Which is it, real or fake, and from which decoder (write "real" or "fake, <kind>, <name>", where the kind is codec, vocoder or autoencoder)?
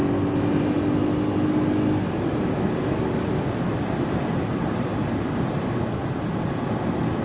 real